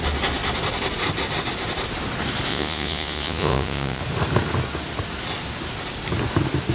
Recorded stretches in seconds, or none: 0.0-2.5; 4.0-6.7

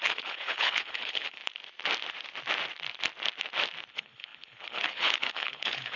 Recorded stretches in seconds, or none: 1.4-3.9

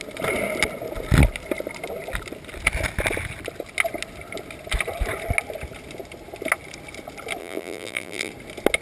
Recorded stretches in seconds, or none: 0.0-7.4; 8.3-8.8

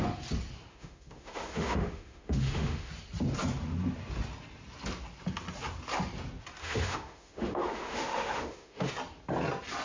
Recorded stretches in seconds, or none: 0.0-0.7; 2.9-6.6; 8.9-9.8

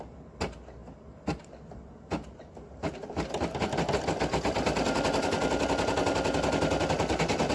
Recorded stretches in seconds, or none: 0.0-7.5